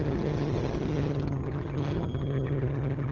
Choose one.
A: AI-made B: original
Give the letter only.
A